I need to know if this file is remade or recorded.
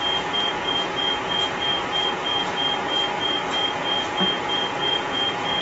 remade